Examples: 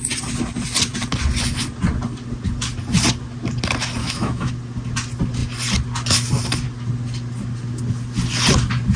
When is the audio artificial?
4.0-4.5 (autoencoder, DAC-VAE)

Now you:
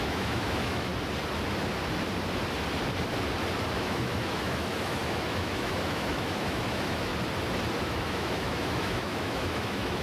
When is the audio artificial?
0.0-0.9 (autoencoder, DAC-VAE); 3.7-7.1; 7.8-10.0

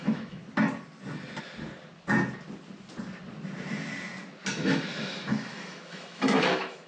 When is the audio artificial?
0.0-0.4 (autoencoder, DAC-VAE); 4.5-6.9

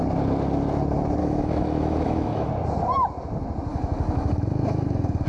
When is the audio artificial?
1.2-2.5 (autoencoder, DAC-VAE); 3.7-5.3

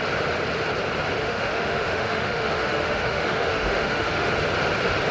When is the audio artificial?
1.2-4.3 (autoencoder, DAC-VAE)